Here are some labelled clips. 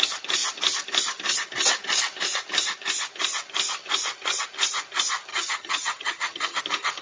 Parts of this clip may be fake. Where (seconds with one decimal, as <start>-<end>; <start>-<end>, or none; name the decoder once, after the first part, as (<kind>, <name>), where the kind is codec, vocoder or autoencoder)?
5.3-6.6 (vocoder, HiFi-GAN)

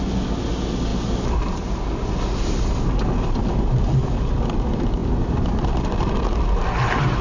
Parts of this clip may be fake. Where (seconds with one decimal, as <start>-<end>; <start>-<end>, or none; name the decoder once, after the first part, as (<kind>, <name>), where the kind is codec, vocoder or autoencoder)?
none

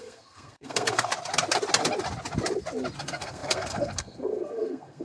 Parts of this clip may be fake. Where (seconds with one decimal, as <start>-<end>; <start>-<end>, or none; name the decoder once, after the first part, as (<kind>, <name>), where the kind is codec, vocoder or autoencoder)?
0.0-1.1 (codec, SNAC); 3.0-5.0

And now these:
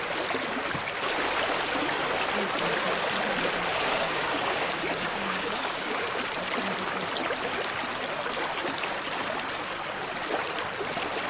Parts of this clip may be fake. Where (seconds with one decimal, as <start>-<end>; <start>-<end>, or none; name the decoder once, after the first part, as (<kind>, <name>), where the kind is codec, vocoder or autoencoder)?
3.7-6.0 (codec, DAC)